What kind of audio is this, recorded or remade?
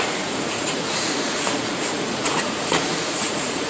remade